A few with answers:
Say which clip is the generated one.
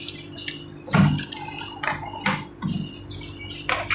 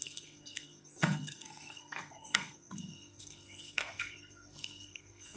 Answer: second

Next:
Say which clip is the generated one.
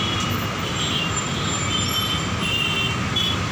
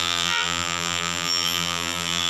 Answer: second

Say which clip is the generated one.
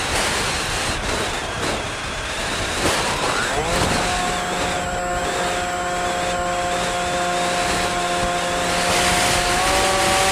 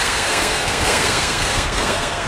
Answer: second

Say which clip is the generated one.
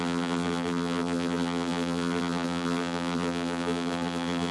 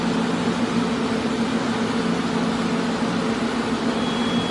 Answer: first